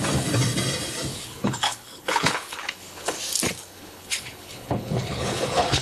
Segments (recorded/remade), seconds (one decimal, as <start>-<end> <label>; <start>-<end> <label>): 0.0-1.1 recorded; 1.1-3.2 remade; 3.2-3.6 recorded; 3.6-5.8 remade